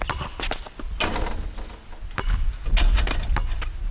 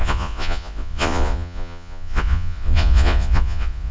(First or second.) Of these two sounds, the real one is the first